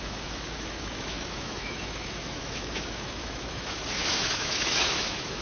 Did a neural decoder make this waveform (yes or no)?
yes